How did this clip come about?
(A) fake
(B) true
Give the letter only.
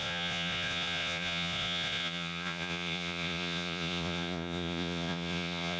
A